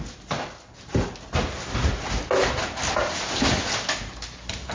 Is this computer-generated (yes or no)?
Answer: no